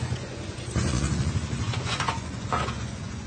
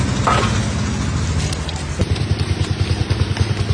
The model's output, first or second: first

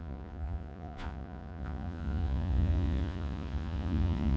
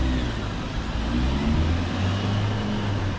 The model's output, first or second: first